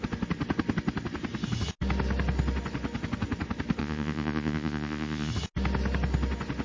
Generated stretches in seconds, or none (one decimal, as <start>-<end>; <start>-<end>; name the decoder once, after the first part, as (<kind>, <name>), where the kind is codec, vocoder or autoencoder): 3.8-5.3 (vocoder, Vocos)